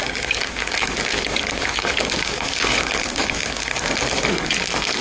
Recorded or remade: remade